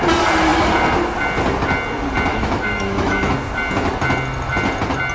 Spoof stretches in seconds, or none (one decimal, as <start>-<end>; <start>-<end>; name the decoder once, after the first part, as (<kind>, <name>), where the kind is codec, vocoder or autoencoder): 2.3-3.3 (autoencoder, DAC-VAE)